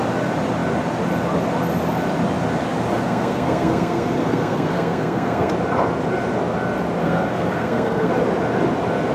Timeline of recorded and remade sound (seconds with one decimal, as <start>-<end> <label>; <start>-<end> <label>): 0.0-2.9 recorded; 2.9-5.5 remade; 5.5-7.0 recorded; 7.0-8.1 remade; 8.1-9.1 recorded